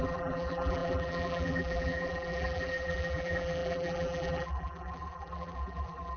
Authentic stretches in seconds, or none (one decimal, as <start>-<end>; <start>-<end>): none